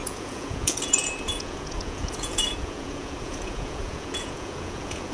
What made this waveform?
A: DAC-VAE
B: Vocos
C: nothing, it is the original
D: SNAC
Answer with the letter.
B